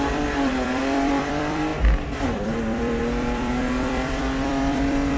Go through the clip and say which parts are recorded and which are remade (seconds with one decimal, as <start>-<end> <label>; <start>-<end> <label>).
0.0-5.2 remade